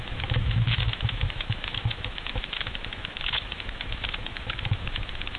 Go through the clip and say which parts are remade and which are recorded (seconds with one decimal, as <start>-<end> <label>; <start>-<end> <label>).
0.0-5.4 remade